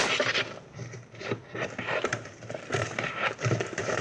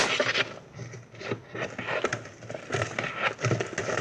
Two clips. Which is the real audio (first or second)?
second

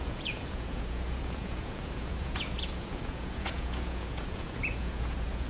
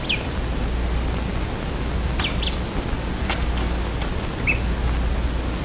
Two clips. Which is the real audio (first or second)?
second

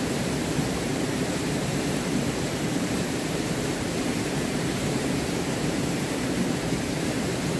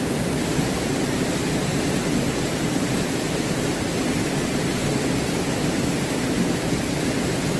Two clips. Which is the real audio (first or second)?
second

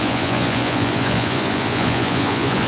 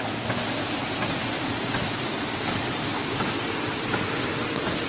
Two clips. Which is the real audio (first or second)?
second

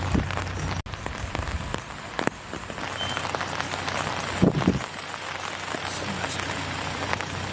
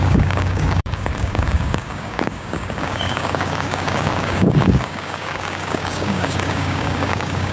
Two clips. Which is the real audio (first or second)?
first